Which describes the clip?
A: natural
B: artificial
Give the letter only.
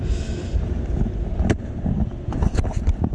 A